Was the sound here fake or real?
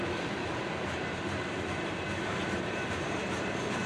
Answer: fake